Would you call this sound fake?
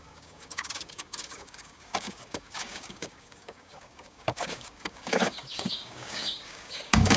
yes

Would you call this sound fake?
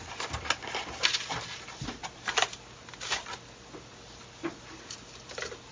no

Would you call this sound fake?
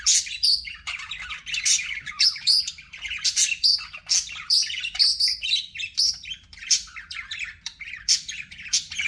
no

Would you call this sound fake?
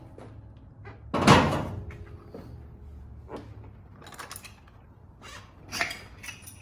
no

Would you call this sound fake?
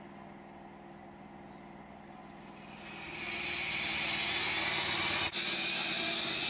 no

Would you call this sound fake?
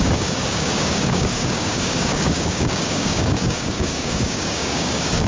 yes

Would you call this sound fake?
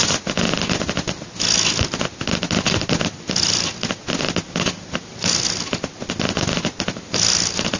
no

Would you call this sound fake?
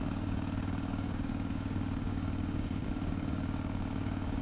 yes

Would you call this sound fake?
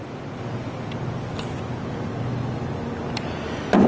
no